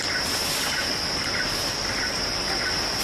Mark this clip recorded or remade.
recorded